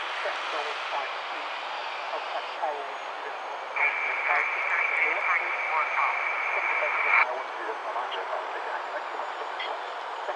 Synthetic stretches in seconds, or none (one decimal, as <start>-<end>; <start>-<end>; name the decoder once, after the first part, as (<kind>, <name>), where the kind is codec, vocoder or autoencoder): none